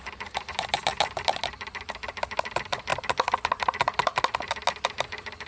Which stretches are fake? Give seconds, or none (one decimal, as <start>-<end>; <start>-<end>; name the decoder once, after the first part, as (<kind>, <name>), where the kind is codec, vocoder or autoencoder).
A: none